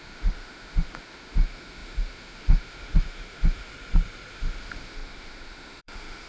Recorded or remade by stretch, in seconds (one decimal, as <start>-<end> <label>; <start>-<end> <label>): 0.0-3.7 remade; 3.7-4.3 recorded; 4.3-6.3 remade